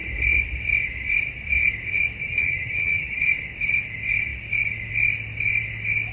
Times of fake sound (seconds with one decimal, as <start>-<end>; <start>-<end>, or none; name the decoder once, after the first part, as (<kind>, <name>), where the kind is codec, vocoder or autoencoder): 2.2-3.2 (vocoder, HiFi-GAN)